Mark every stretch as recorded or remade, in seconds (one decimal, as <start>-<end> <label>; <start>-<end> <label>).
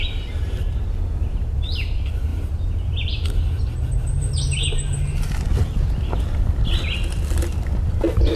0.0-2.3 recorded; 2.3-4.6 remade; 4.6-8.4 recorded